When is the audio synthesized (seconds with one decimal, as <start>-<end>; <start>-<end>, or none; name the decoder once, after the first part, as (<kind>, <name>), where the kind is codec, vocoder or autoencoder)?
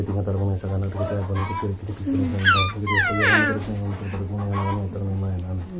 none